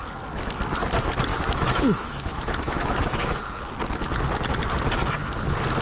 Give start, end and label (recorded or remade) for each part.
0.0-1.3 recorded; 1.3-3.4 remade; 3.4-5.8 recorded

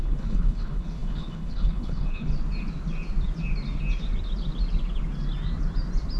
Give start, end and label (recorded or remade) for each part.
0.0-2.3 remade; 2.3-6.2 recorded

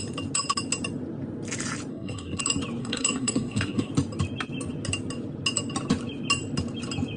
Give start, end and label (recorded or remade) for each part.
0.0-1.9 recorded; 1.9-2.4 remade; 2.4-2.8 recorded; 2.8-3.9 remade; 3.9-7.2 recorded

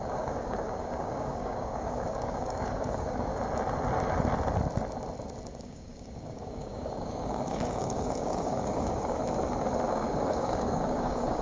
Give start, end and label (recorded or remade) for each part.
0.0-3.3 remade; 3.3-5.6 recorded; 5.6-9.2 remade; 9.2-9.9 recorded; 9.9-11.4 remade